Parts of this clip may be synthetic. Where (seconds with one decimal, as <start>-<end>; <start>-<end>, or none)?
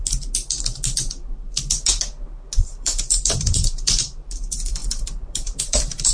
2.7-6.1